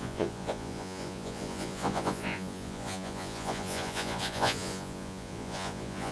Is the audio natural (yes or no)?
no